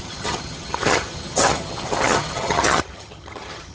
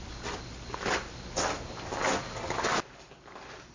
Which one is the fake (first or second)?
first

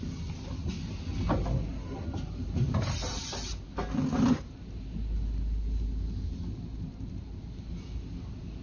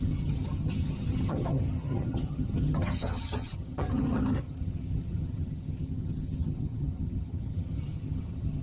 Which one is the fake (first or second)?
second